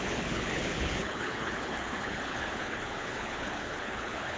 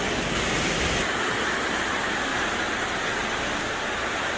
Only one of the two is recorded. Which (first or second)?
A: second